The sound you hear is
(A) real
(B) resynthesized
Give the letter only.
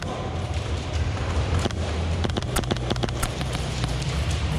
B